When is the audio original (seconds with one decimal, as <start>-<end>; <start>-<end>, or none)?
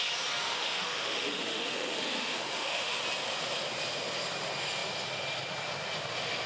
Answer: 0.0-0.4; 3.0-6.5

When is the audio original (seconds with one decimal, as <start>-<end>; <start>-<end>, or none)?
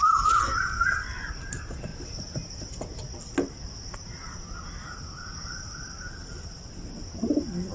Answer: 0.0-7.7